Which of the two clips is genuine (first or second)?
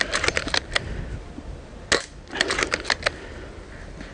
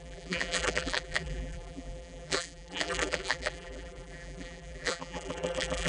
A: first